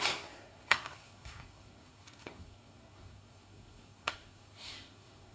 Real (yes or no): no